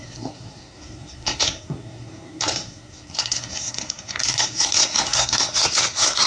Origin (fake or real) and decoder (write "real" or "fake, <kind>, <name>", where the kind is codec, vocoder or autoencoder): fake, codec, SNAC